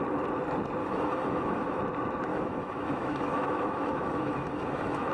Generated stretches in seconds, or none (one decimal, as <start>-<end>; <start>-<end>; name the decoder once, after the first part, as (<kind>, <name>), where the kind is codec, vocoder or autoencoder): 0.8-1.8 (autoencoder, DAC-VAE); 2.3-5.1